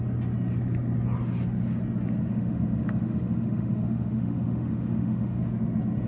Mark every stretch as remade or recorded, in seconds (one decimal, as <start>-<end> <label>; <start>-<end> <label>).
0.0-2.3 recorded; 2.3-5.4 remade; 5.4-6.1 recorded